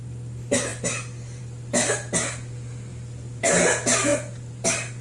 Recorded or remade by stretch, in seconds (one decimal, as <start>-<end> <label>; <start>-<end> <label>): 0.0-5.0 recorded